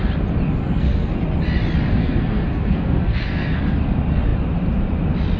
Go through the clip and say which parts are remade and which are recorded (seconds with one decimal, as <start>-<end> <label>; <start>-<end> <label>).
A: 0.0-0.6 recorded; 0.6-1.1 remade; 1.1-2.0 recorded; 2.0-3.6 remade; 3.6-5.4 recorded